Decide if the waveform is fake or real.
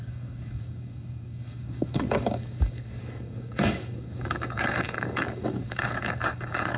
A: fake